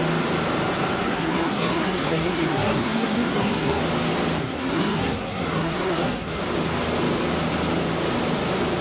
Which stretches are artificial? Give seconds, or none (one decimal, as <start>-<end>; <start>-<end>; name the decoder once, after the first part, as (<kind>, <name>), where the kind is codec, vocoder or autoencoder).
1.0-3.8 (codec, SNAC); 4.4-6.4